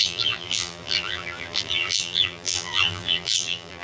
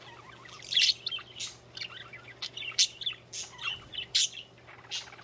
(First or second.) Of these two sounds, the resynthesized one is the first